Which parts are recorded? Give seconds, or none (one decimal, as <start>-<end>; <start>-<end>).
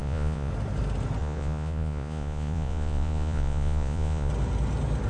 0.5-1.2; 4.3-5.1